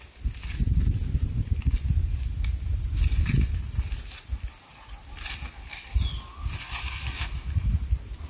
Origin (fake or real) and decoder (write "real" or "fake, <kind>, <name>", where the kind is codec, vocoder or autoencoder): real